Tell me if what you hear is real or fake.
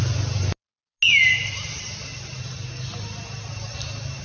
real